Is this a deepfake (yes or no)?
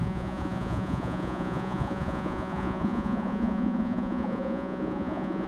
yes